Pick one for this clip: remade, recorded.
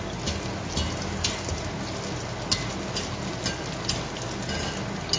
recorded